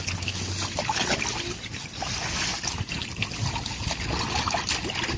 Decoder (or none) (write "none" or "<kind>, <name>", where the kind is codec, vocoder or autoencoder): none